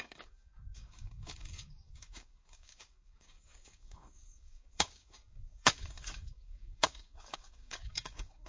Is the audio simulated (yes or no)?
yes